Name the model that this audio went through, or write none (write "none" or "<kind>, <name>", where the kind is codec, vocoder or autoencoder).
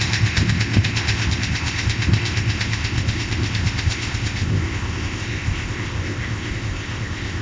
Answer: codec, ZipCodec